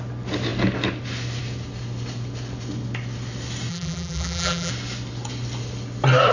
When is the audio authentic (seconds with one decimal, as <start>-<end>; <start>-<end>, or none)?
0.0-3.7; 4.7-6.3